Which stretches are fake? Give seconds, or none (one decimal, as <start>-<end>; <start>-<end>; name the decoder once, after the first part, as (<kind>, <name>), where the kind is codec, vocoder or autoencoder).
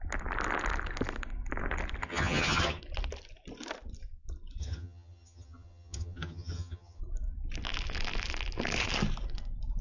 2.0-2.8 (vocoder, HiFi-GAN); 4.6-7.0